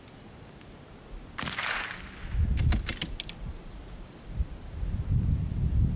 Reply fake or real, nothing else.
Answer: real